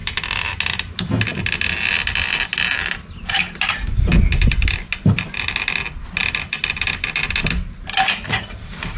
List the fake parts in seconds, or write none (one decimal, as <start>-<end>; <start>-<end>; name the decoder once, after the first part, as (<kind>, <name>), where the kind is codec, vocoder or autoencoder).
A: 0.0-0.5 (vocoder, BigVGAN v2)